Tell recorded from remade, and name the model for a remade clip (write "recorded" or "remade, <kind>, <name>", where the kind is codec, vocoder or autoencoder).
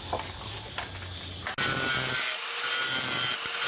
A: recorded